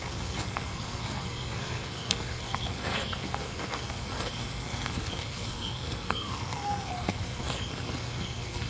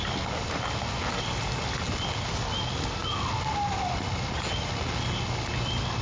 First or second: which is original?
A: second